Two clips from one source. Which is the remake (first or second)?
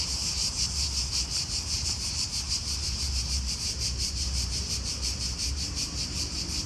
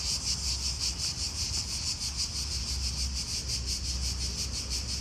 first